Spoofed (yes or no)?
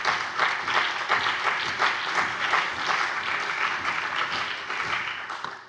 no